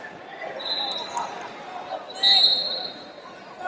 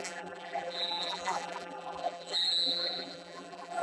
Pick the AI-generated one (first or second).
second